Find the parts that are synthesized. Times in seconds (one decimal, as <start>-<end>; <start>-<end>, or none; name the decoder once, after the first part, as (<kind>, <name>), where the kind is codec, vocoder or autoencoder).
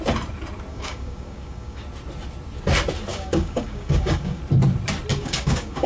0.7-1.8 (codec, DAC); 3.1-4.4; 5.1-5.9